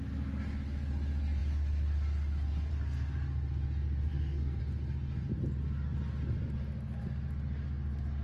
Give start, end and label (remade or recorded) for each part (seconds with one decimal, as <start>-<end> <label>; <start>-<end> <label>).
0.0-4.1 recorded; 4.1-4.6 remade; 4.6-8.2 recorded